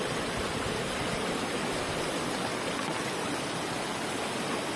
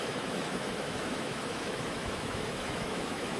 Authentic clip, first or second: first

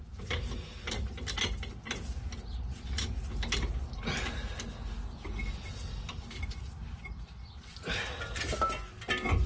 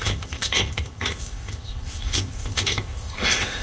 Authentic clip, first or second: first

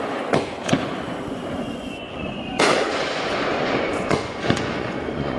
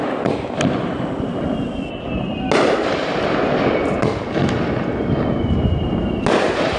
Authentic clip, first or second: second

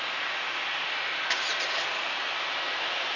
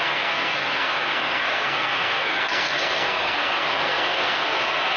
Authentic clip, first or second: first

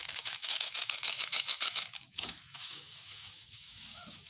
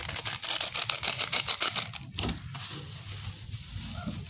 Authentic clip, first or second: second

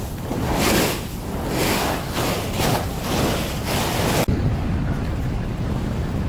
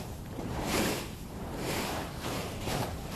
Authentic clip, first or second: first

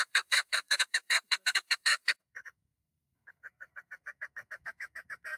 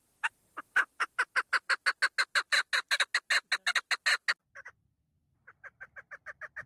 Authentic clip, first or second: second